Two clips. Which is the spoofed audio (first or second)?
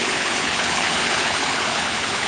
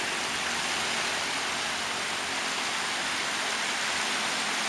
first